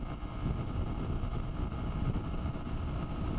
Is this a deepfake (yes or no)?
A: no